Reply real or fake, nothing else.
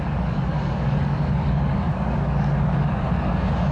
fake